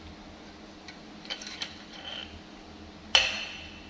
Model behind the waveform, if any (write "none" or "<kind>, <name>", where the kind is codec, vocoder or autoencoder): none